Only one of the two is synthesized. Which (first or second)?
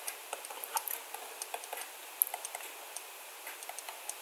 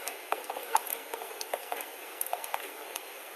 second